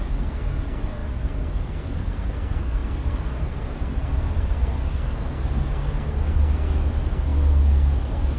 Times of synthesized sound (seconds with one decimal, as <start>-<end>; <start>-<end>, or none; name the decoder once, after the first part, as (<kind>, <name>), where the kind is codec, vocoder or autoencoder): 0.0-8.4 (codec, SNAC)

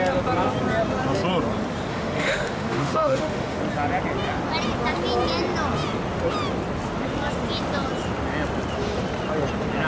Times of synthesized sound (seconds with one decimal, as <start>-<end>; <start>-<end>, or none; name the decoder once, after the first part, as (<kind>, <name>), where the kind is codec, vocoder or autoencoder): 1.9-3.6 (autoencoder, DAC-VAE)

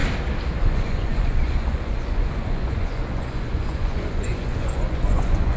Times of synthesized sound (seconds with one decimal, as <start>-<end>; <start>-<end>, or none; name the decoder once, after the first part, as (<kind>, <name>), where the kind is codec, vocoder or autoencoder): 0.6-5.6 (vocoder, Vocos)

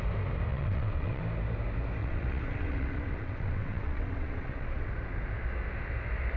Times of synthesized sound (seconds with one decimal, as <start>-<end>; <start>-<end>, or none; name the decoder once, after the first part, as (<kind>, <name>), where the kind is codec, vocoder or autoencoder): 0.5-1.2 (vocoder, WaveNeXt); 2.0-4.9

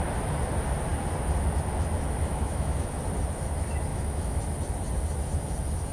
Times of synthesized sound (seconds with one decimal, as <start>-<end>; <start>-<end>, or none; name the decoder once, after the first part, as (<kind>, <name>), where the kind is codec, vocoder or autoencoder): 2.2-3.0 (autoencoder, DAC-VAE); 3.9-4.4

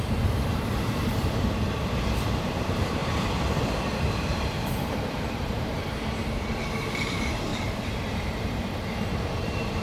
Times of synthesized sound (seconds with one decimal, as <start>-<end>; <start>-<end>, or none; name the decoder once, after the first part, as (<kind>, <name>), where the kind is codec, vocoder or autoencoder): 0.0-3.0 (vocoder, BigVGAN v2); 3.5-5.7; 6.9-7.5; 8.1-9.8

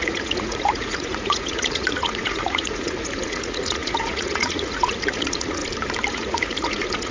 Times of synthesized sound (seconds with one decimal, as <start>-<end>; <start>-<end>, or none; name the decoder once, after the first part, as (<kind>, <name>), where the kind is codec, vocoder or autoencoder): 0.0-5.6 (vocoder, Vocos); 6.1-7.1